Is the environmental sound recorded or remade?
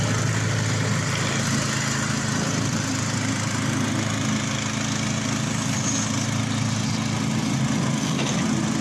recorded